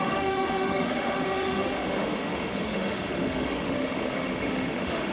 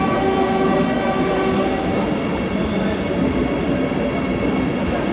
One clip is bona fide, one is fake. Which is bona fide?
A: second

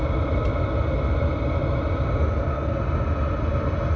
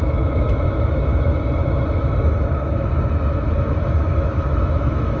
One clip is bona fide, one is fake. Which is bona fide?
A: first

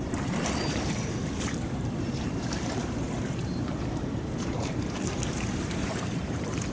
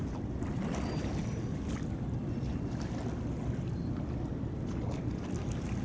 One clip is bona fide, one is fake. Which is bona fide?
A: second